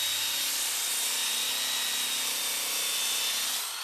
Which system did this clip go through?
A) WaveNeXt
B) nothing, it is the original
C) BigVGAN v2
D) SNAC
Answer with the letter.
B